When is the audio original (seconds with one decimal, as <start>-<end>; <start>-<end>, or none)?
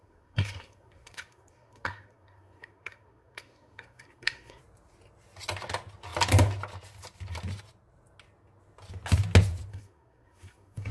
4.6-9.7